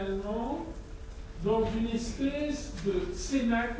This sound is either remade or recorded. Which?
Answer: recorded